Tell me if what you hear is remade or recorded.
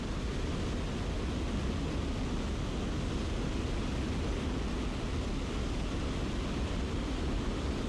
recorded